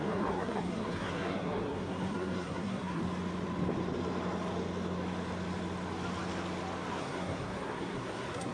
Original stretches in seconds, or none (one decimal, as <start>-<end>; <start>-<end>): 3.0-7.0